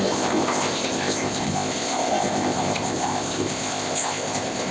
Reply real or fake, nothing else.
fake